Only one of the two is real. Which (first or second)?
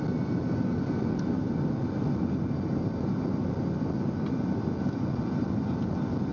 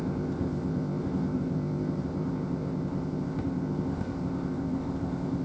first